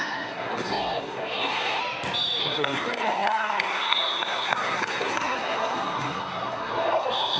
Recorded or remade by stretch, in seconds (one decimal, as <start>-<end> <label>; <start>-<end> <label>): 0.0-1.8 remade; 1.8-2.4 recorded; 2.4-7.4 remade